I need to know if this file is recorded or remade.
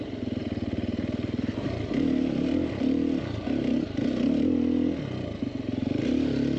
recorded